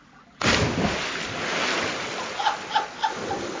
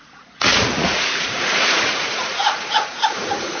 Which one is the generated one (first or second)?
second